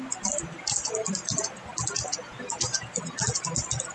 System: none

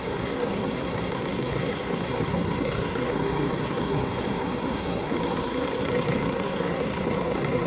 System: codec, SNAC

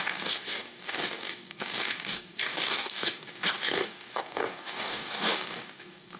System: codec, DAC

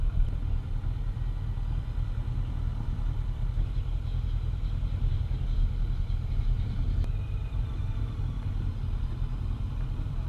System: none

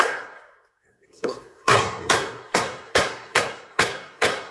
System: codec, SNAC